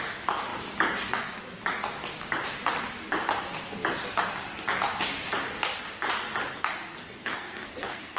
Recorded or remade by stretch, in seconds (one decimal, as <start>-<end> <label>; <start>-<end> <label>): 0.0-7.0 recorded; 7.0-8.2 remade